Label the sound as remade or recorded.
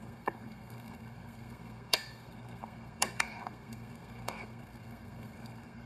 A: remade